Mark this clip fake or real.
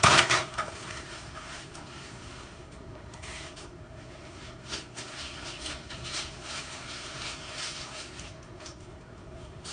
fake